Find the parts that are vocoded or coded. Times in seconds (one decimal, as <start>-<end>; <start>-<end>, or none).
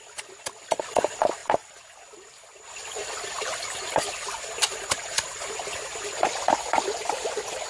none